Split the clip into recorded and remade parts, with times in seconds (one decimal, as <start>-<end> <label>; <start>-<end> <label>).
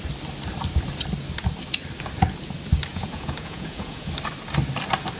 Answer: 0.0-2.9 recorded; 2.9-4.1 remade; 4.1-5.2 recorded